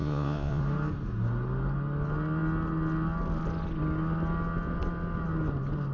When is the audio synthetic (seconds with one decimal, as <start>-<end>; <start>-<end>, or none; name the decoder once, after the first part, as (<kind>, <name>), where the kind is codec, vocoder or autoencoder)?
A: 0.0-0.6 (vocoder, Vocos)